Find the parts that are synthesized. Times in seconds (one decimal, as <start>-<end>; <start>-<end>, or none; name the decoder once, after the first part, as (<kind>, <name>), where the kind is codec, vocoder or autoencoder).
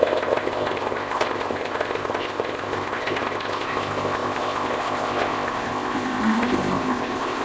0.0-7.4 (codec, ZipCodec)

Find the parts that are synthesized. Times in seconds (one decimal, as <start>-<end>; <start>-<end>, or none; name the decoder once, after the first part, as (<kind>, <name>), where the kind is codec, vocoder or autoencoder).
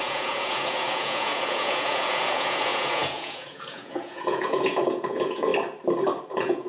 0.0-5.5 (vocoder, Vocos); 6.3-6.7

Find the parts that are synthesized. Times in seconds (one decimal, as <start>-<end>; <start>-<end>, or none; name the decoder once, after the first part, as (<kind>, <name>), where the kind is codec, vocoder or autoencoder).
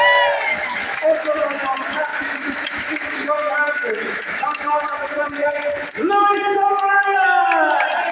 0.5-1.4 (autoencoder, DAC-VAE); 2.1-6.7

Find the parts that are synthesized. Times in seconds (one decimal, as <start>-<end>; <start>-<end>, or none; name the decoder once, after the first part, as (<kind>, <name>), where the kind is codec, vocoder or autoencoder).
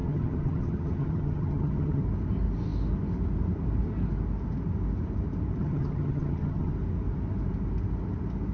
0.0-2.0 (vocoder, HiFi-GAN); 5.6-6.7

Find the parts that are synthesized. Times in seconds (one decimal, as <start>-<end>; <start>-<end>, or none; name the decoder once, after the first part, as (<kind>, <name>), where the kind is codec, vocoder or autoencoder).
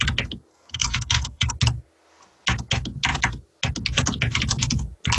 0.5-1.5 (codec, SNAC)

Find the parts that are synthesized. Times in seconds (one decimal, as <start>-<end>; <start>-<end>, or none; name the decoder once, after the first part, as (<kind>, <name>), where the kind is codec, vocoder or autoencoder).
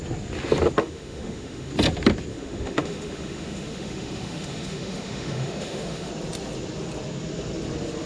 0.8-1.7 (autoencoder, DAC-VAE); 2.3-6.1